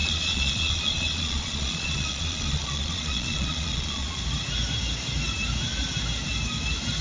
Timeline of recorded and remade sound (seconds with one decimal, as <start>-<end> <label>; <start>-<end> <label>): 0.0-4.2 remade; 4.2-7.0 recorded